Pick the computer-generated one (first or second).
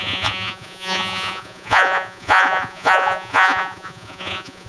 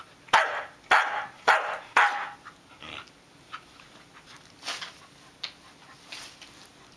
first